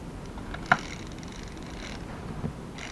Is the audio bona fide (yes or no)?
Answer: yes